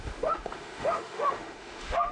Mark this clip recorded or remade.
remade